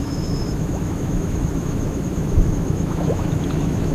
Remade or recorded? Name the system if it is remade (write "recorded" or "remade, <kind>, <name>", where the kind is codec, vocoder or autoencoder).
remade, autoencoder, DAC-VAE